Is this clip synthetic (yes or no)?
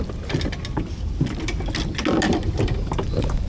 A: no